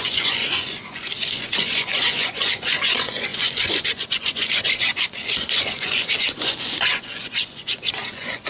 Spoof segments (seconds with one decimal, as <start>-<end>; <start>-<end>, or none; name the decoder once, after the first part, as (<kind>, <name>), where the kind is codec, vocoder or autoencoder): 0.0-8.5 (vocoder, Vocos)